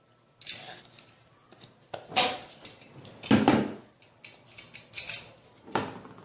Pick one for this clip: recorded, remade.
recorded